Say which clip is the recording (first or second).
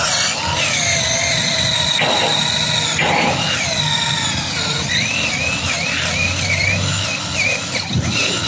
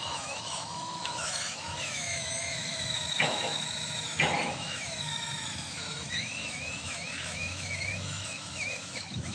first